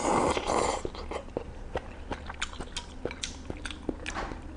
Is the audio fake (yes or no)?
no